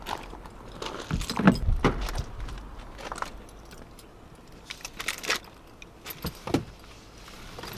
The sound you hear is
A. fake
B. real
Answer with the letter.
B